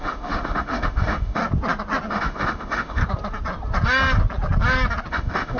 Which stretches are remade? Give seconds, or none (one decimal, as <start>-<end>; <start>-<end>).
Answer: 0.0-1.4; 2.1-3.0; 5.1-5.6

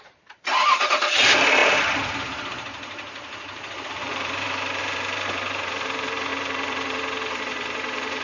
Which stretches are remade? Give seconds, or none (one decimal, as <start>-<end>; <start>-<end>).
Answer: 0.0-8.2

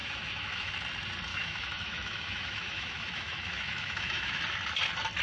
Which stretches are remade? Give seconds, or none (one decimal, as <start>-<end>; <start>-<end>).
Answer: 0.0-0.7; 1.3-4.4

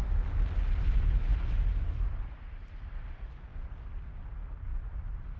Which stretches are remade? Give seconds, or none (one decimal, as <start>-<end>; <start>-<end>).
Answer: 0.7-1.3; 3.1-3.5; 5.0-5.4

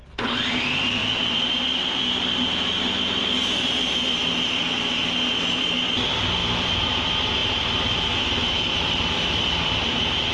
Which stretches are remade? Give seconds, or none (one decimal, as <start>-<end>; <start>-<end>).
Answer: 0.0-1.0; 5.5-7.4; 8.4-10.3

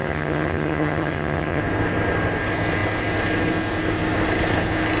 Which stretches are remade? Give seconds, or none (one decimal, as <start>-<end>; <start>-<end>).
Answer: 0.0-1.6

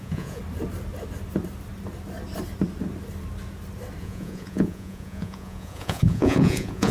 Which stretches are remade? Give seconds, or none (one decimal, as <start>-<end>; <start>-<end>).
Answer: 0.0-0.4; 4.0-6.9